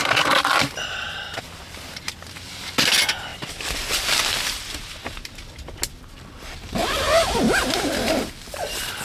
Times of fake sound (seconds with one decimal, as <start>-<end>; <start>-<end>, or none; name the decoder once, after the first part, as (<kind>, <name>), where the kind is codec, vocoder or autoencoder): 3.3-5.3 (vocoder, BigVGAN v2); 6.8-8.6